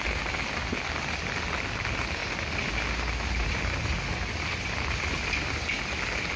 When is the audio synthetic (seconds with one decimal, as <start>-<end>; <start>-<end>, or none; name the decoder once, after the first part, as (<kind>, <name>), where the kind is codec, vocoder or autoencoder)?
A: none